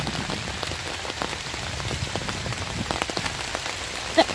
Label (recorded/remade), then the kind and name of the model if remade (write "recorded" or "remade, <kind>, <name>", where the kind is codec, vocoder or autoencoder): recorded